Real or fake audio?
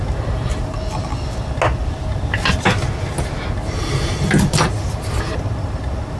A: real